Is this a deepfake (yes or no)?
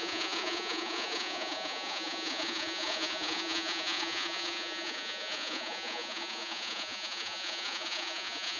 yes